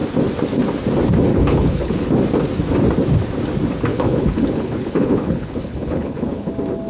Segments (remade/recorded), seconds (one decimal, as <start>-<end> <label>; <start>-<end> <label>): 0.0-1.3 recorded; 1.3-2.1 remade; 2.1-3.9 recorded; 3.9-6.5 remade; 6.5-6.9 recorded